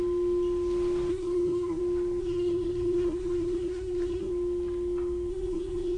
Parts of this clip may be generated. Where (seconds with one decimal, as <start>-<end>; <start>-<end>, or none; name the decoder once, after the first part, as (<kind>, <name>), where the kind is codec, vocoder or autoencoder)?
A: 1.1-1.8 (codec, SNAC); 2.2-4.3; 5.3-6.0